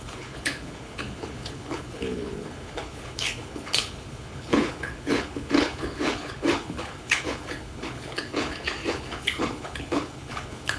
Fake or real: fake